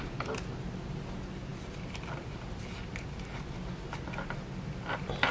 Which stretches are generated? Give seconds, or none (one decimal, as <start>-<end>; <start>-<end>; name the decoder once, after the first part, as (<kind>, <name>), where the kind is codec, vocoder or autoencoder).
none